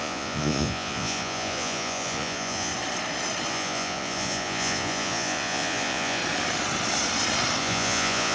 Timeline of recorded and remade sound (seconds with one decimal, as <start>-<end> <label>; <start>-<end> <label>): 0.0-2.7 remade; 2.7-3.5 recorded; 3.5-6.2 remade; 6.2-7.6 recorded; 7.6-8.3 remade